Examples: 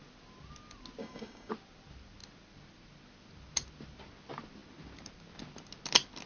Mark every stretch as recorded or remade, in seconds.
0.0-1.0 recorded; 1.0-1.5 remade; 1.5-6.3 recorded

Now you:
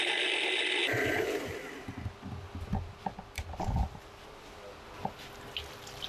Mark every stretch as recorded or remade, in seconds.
0.0-6.1 recorded

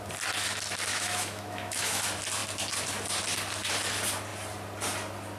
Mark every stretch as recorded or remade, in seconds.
0.0-0.9 recorded; 0.9-2.0 remade; 2.0-5.4 recorded

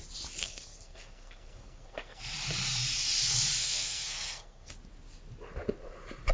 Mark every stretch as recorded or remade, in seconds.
0.0-0.4 recorded; 0.4-2.2 remade; 2.2-3.6 recorded; 3.6-4.7 remade; 4.7-6.3 recorded

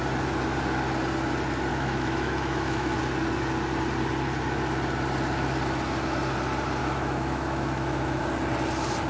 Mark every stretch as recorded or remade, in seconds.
0.0-1.7 recorded; 1.7-3.0 remade; 3.0-6.8 recorded; 6.8-8.2 remade; 8.2-9.1 recorded

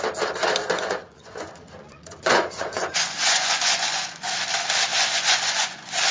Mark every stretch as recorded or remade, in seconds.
0.0-0.6 recorded; 0.6-4.3 remade; 4.3-4.9 recorded; 4.9-6.1 remade